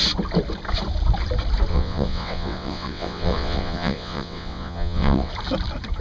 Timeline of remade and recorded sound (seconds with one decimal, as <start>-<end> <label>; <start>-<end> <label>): 0.0-1.7 recorded; 1.7-5.3 remade; 5.3-6.0 recorded